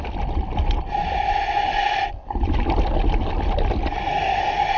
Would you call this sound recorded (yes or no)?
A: yes